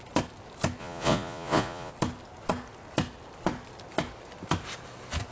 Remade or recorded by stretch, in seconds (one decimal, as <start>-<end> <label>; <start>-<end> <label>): 0.0-0.8 recorded; 0.8-1.9 remade; 1.9-5.3 recorded

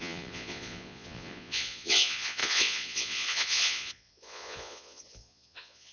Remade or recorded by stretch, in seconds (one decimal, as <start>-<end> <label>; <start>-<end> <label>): 0.0-5.9 remade

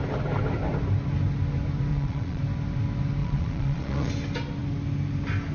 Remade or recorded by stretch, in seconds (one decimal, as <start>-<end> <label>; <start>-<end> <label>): 0.0-1.9 recorded; 1.9-2.4 remade; 2.4-3.2 recorded; 3.2-4.1 remade; 4.1-5.5 recorded

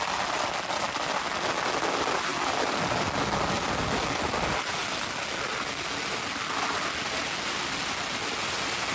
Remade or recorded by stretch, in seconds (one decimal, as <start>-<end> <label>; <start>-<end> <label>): 0.0-8.9 recorded

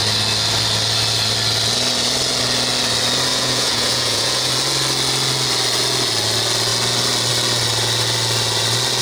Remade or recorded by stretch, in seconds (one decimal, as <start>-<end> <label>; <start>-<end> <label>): 0.0-3.3 recorded; 3.3-4.5 remade; 4.5-9.0 recorded

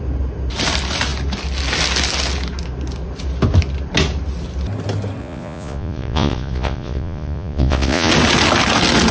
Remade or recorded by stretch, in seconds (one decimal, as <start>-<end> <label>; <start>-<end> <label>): 0.0-5.2 recorded; 5.2-8.1 remade; 8.1-9.1 recorded